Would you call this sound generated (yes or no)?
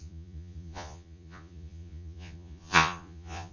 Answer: yes